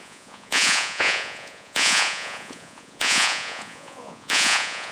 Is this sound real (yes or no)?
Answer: no